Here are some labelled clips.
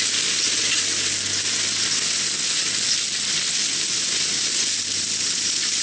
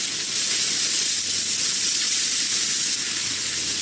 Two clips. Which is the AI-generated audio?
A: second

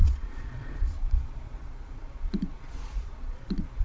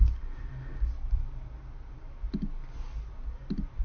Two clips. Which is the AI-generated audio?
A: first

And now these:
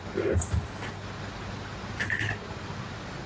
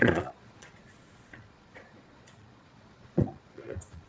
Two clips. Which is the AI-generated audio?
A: second